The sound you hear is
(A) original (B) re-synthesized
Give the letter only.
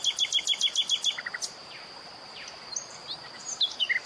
A